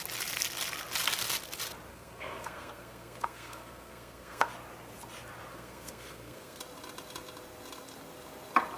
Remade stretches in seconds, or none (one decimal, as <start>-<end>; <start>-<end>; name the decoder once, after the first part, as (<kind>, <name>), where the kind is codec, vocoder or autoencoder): 1.9-4.5 (codec, SNAC); 5.5-6.6